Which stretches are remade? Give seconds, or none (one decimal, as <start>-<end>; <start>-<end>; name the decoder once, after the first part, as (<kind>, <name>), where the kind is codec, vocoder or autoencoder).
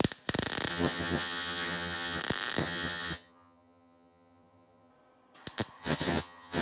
0.7-2.2 (vocoder, HiFi-GAN); 2.6-4.9; 5.8-6.6